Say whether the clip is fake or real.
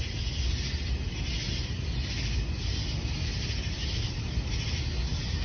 real